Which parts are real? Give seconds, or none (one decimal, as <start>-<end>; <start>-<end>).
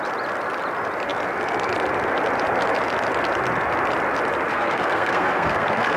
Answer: 0.0-4.5